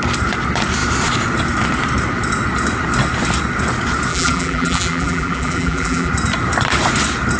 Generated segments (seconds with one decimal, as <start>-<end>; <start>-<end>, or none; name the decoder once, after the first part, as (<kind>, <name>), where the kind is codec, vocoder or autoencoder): 4.1-6.1 (vocoder, BigVGAN v2)